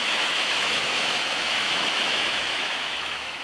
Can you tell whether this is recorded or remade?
remade